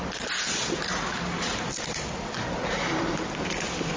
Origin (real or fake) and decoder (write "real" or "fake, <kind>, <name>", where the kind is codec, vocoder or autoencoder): real